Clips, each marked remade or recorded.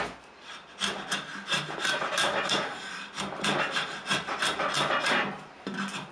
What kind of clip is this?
recorded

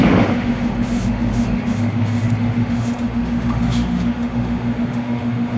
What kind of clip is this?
remade